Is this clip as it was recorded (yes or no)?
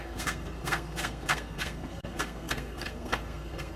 no